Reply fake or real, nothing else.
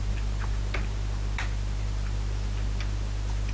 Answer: real